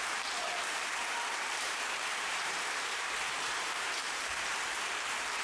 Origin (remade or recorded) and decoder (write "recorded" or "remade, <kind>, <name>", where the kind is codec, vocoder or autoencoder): remade, vocoder, BigVGAN v2